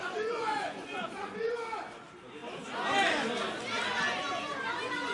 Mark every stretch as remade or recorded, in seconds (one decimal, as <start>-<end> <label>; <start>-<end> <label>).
0.0-1.5 remade; 1.5-5.1 recorded